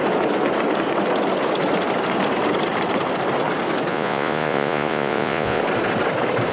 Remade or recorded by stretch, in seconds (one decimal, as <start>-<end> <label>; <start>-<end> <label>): 0.0-3.9 recorded; 3.9-5.6 remade; 5.6-6.5 recorded